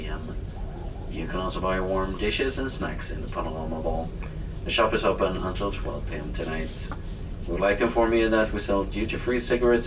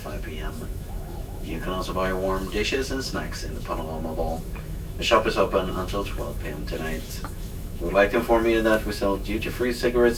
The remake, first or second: second